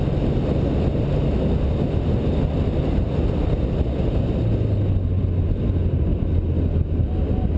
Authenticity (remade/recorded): recorded